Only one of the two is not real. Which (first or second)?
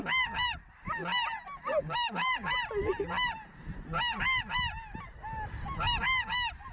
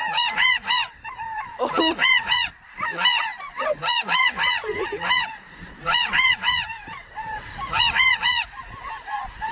second